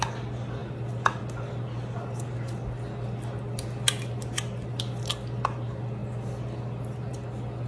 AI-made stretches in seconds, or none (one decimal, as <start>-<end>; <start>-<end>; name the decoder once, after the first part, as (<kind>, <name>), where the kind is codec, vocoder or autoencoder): none